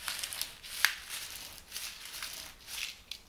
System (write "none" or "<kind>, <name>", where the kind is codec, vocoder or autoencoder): none